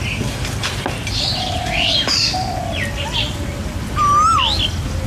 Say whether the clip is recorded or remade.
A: recorded